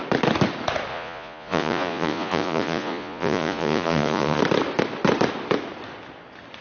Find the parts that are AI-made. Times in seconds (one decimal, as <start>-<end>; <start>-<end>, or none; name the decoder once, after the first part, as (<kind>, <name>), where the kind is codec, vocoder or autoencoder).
0.9-4.4 (vocoder, Vocos)